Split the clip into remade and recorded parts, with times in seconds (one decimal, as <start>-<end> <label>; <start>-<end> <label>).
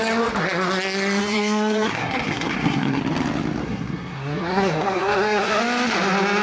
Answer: 0.0-1.2 recorded; 1.2-3.0 remade; 3.0-3.6 recorded; 3.6-5.6 remade; 5.6-6.4 recorded